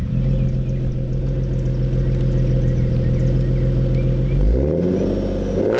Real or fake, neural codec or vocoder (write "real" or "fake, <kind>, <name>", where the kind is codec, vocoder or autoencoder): real